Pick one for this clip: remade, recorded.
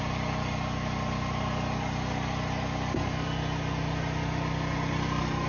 recorded